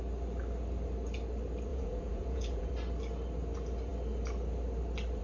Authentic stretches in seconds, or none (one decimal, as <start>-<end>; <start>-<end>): 0.0-1.7; 2.7-5.2